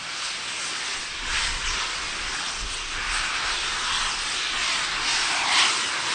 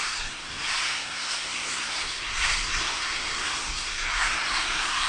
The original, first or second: first